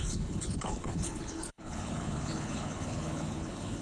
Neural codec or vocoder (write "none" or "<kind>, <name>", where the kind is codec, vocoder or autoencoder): codec, HILCodec